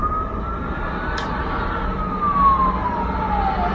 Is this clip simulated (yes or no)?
no